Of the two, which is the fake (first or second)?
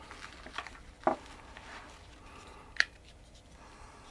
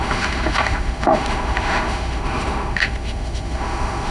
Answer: second